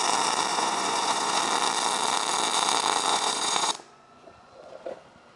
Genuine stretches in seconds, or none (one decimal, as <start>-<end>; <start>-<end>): 0.0-0.5; 1.4-3.1; 4.7-5.4